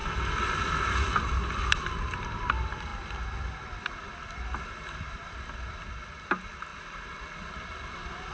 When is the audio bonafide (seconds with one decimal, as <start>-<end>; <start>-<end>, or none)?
0.0-8.3